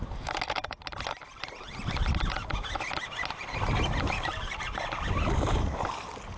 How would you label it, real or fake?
real